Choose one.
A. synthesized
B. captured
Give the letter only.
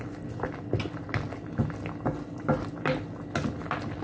B